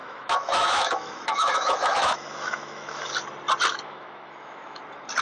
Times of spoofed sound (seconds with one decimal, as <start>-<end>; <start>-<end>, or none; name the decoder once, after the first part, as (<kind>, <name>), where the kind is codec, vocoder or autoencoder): 0.0-3.1 (autoencoder, DAC-VAE); 3.7-4.8